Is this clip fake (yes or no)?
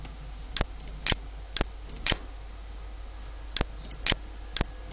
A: no